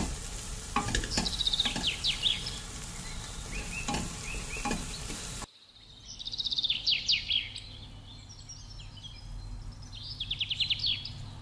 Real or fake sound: real